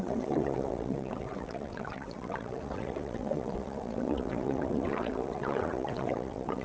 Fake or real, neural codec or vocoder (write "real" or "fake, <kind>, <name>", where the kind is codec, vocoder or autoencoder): fake, vocoder, WaveNeXt